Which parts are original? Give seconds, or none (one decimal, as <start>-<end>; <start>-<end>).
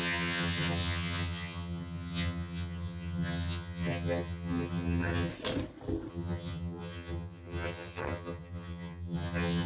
5.3-6.1